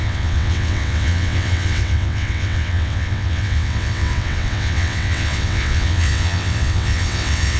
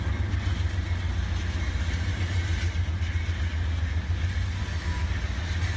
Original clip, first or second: second